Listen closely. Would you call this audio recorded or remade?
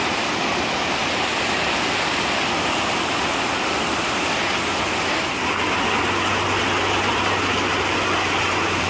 recorded